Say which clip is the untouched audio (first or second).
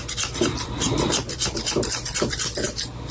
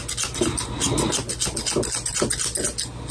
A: second